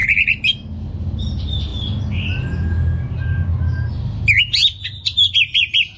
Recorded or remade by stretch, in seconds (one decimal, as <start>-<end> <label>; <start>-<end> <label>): 0.0-6.0 recorded